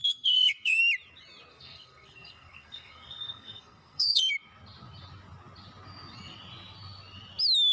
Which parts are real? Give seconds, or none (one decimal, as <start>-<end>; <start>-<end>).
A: 0.8-1.5; 4.3-7.7